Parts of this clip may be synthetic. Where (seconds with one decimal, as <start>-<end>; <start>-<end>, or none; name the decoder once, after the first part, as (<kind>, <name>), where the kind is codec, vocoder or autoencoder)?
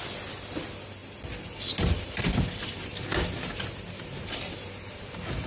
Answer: 0.6-5.5 (vocoder, BigVGAN v2)